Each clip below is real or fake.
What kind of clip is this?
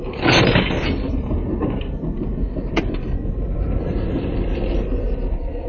real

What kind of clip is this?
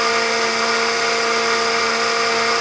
real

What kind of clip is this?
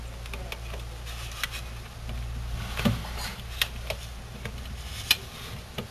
real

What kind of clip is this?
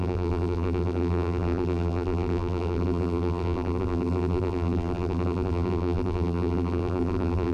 fake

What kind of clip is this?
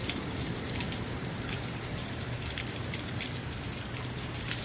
fake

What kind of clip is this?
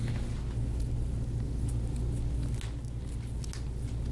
real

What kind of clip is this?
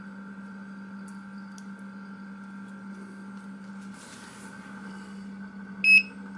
real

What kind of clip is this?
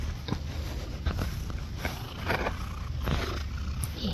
real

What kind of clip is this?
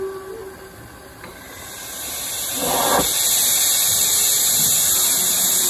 real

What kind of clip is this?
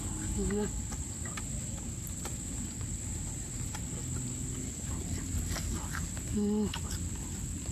real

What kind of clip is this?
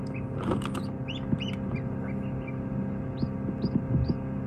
real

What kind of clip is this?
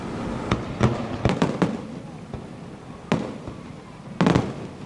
real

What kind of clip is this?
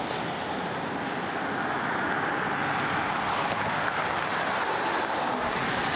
real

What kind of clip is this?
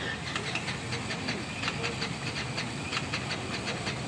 real